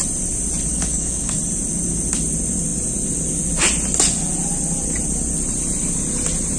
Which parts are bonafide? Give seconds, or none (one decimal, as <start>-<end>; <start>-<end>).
0.0-0.7; 1.4-6.6